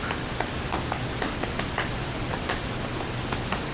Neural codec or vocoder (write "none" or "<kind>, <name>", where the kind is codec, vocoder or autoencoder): none